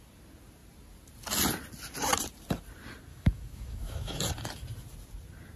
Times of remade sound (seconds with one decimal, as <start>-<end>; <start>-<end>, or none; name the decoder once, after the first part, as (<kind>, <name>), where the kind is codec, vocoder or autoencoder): 3.1-4.2 (autoencoder, DAC-VAE)

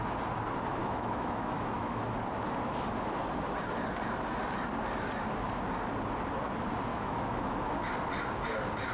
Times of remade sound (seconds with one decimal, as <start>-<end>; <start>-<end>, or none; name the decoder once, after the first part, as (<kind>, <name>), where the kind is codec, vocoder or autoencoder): 0.8-2.0 (autoencoder, DAC-VAE); 6.9-7.9

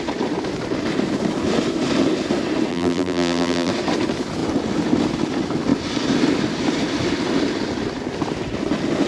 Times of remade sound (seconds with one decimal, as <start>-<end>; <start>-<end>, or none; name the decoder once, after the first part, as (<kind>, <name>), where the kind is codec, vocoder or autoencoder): 2.7-3.7 (vocoder, BigVGAN v2)

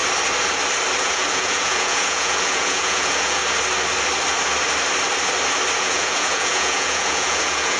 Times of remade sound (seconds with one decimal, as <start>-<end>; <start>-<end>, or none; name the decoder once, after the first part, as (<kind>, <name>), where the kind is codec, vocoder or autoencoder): 1.0-3.4 (vocoder, Vocos); 5.8-7.8